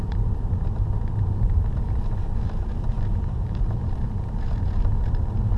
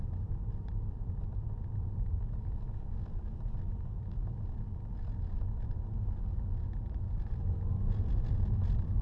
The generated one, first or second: first